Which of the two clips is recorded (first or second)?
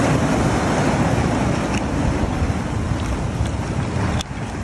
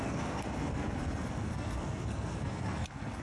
first